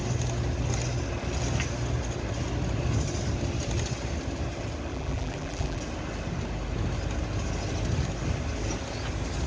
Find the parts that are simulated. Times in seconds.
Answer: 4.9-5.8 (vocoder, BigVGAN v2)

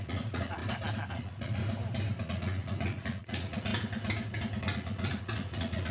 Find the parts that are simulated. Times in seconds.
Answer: 0.0-0.6 (vocoder, Vocos); 1.1-1.6; 2.2-3.7; 4.6-5.9

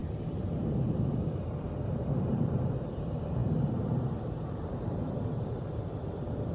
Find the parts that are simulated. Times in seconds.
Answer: 0.0-6.5 (vocoder, BigVGAN v2)

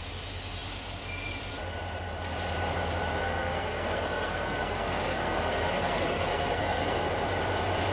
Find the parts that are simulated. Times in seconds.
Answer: 3.2-7.1 (codec, SNAC)

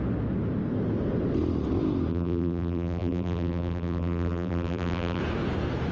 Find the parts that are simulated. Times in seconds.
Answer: 2.1-5.2 (vocoder, BigVGAN v2)

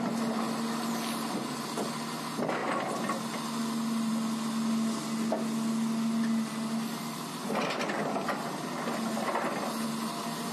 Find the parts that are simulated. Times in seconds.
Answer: none

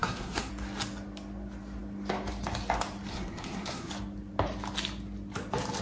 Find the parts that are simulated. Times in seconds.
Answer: 0.0-0.5 (codec, SNAC); 3.1-3.9